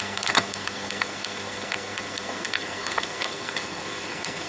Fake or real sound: fake